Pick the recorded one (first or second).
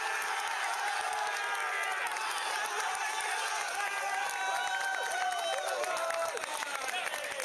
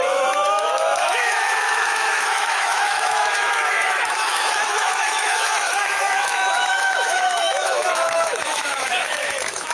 first